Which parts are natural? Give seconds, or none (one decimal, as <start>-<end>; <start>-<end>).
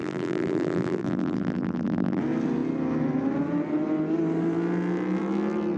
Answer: 2.2-5.8